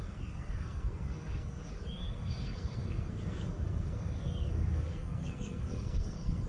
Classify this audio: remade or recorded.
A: remade